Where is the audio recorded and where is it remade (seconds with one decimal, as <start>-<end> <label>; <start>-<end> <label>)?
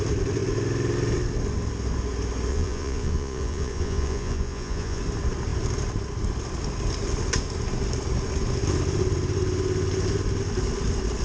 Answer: 0.0-2.5 recorded; 2.5-5.0 remade; 5.0-11.2 recorded